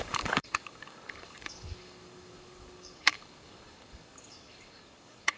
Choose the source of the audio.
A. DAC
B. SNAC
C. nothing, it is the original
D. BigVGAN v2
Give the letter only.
A